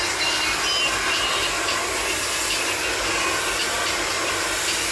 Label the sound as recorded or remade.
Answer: recorded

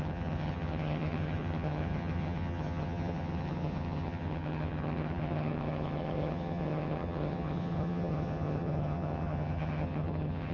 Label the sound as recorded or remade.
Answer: remade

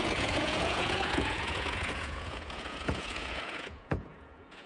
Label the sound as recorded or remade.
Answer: remade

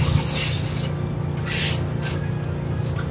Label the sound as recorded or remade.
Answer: recorded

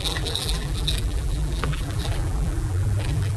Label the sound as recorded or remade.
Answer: remade